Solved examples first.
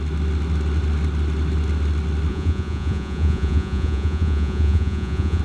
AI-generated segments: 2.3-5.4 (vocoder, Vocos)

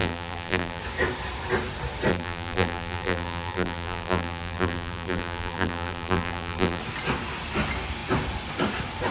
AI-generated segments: 0.0-0.8 (vocoder, BigVGAN v2); 2.1-6.8

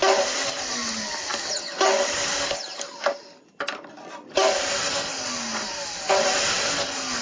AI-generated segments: none

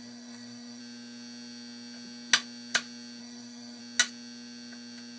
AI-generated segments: 0.0-0.8 (codec, SNAC); 3.2-3.8